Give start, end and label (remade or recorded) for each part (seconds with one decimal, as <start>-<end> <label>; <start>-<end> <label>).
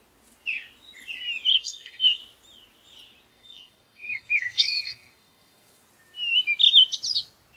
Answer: 0.0-1.5 recorded; 1.5-2.2 remade; 2.2-3.3 recorded; 3.3-5.8 remade; 5.8-7.6 recorded